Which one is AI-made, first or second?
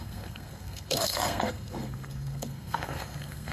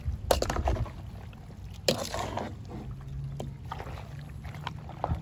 first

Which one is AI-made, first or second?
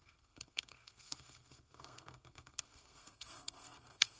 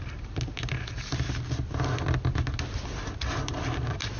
first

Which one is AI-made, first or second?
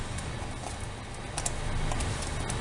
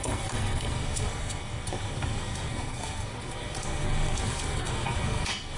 second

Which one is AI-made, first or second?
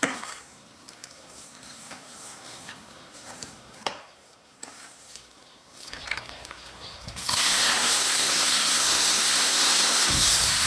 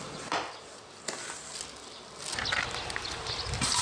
first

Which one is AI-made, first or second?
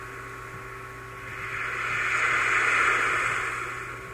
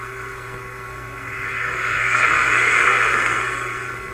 second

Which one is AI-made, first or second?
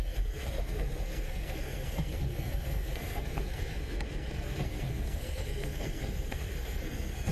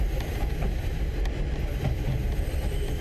first